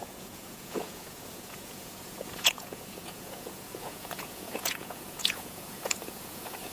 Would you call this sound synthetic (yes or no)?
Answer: yes